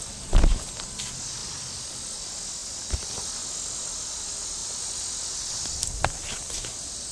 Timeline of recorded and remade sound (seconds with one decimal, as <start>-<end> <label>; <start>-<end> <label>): 0.0-1.4 recorded; 1.4-1.9 remade; 1.9-2.6 recorded; 2.6-3.3 remade; 3.3-4.6 recorded; 4.6-5.3 remade; 5.3-7.1 recorded